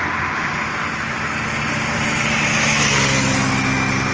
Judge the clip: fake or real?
real